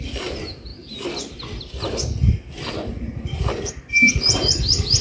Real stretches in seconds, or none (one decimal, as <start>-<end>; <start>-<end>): 0.7-3.7